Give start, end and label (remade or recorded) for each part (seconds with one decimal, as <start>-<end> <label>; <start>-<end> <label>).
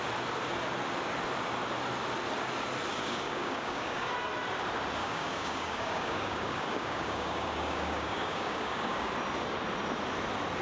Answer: 0.0-2.9 recorded; 2.9-4.1 remade; 4.1-5.0 recorded; 5.0-9.1 remade; 9.1-10.6 recorded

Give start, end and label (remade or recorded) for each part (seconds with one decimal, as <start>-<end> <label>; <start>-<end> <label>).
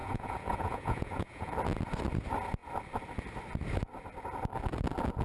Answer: 0.0-1.5 remade; 1.5-5.2 recorded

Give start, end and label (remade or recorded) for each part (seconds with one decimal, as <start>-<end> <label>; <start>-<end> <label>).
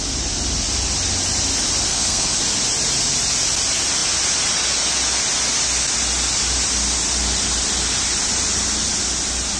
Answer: 0.0-1.9 recorded; 1.9-2.4 remade; 2.4-9.6 recorded